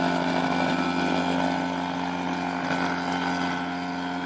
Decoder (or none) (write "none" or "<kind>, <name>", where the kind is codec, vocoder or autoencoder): none